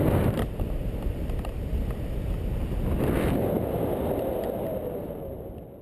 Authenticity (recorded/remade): recorded